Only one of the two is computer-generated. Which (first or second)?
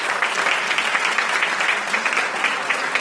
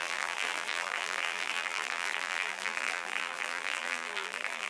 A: second